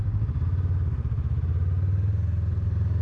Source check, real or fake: real